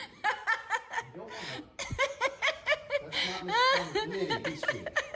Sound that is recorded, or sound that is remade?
recorded